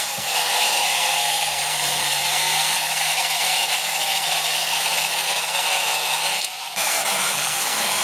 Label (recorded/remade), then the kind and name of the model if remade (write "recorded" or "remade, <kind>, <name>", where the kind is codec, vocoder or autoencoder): remade, codec, SNAC